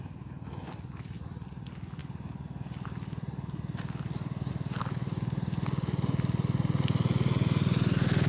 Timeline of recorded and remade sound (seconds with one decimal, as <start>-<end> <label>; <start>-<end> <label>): 0.0-8.3 recorded